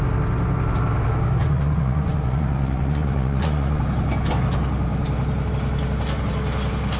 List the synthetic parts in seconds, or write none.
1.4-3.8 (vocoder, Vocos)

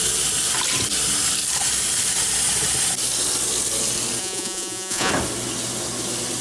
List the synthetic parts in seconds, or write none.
4.2-5.1 (vocoder, Vocos)

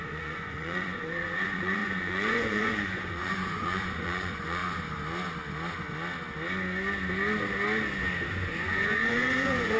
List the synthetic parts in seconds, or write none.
0.0-4.6 (vocoder, Vocos); 8.3-9.8

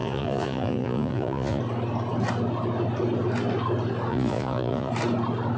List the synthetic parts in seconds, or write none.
0.0-1.6 (vocoder, Vocos); 4.1-4.9

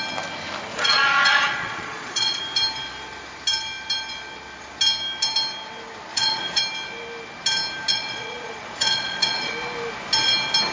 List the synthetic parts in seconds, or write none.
0.7-2.4 (vocoder, Vocos); 6.1-6.6; 7.9-9.5

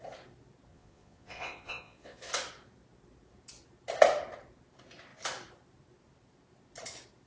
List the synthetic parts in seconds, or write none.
0.7-2.3 (vocoder, Vocos)

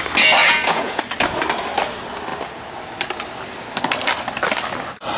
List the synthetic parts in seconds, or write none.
0.4-1.0 (vocoder, Vocos)